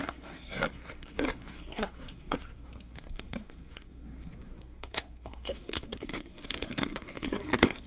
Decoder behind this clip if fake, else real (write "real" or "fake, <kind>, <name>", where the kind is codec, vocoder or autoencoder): fake, codec, SNAC